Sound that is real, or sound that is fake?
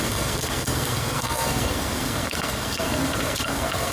fake